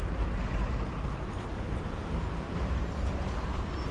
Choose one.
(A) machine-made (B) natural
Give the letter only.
A